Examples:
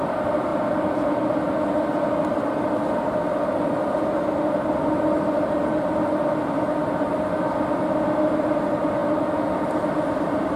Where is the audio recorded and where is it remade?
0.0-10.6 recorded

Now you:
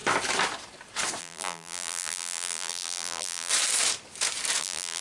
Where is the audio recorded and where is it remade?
0.0-1.2 recorded; 1.2-3.5 remade; 3.5-4.6 recorded; 4.6-5.0 remade